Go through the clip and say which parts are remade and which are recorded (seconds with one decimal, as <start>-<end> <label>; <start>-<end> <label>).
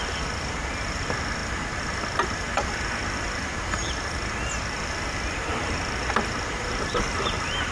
0.0-7.7 recorded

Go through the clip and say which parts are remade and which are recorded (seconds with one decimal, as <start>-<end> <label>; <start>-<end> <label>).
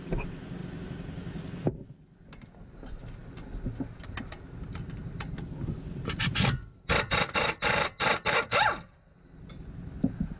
0.0-10.4 recorded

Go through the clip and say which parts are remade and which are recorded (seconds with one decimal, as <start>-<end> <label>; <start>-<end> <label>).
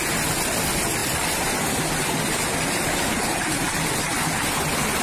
0.0-5.0 recorded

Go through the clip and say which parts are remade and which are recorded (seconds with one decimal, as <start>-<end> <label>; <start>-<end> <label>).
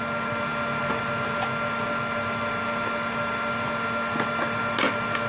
0.0-5.3 recorded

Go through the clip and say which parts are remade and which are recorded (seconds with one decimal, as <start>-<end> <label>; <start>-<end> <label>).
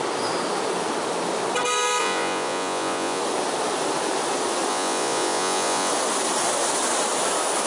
0.0-2.0 recorded; 2.0-3.2 remade; 3.2-4.7 recorded; 4.7-5.9 remade; 5.9-7.7 recorded